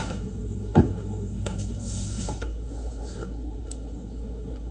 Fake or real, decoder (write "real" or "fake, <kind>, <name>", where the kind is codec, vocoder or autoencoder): fake, codec, SNAC